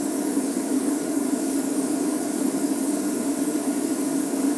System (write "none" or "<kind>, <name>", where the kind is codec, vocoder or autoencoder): codec, DAC